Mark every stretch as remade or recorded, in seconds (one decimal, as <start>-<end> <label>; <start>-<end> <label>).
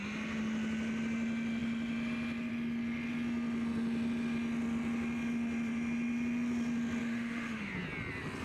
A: 0.0-7.0 recorded; 7.0-7.7 remade; 7.7-8.4 recorded